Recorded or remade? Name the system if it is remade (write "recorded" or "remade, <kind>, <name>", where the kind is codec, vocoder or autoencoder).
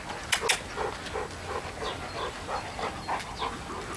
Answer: recorded